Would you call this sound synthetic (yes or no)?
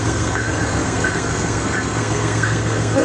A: yes